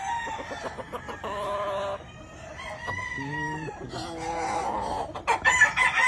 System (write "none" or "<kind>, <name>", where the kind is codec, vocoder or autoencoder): none